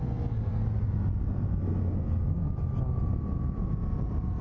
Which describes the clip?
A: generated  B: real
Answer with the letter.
B